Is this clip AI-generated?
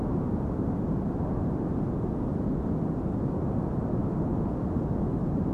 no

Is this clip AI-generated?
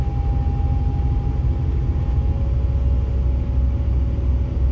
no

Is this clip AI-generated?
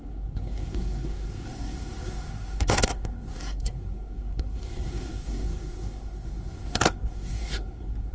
yes